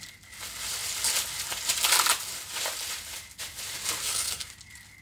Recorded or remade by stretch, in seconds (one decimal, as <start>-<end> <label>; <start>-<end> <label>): 0.0-4.0 recorded; 4.0-4.5 remade; 4.5-5.0 recorded